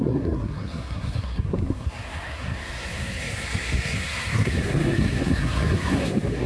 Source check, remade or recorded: remade